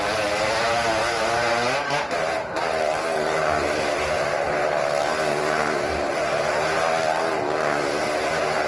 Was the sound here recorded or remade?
recorded